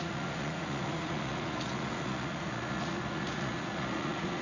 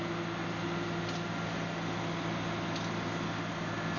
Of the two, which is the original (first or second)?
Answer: second